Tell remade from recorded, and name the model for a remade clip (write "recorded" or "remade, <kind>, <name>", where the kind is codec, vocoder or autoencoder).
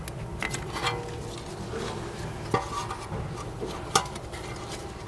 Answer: recorded